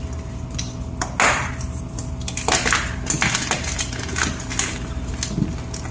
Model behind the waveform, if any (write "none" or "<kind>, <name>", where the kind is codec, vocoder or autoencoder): none